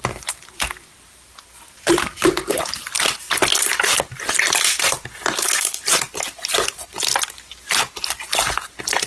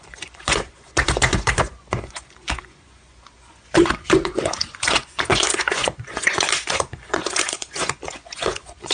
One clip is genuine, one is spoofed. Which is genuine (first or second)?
first